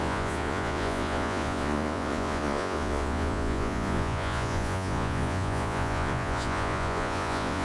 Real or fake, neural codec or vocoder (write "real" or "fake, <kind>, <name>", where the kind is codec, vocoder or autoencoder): fake, vocoder, Vocos